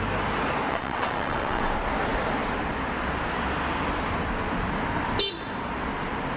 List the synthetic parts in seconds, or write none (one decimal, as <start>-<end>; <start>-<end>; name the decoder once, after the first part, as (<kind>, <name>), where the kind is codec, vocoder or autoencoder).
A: 0.7-1.7 (vocoder, WaveNeXt)